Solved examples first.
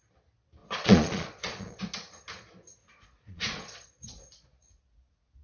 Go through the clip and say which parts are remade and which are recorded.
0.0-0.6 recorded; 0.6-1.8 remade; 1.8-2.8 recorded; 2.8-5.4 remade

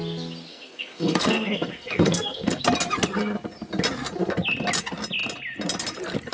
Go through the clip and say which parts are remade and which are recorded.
0.0-0.5 recorded; 0.5-2.6 remade; 2.6-6.3 recorded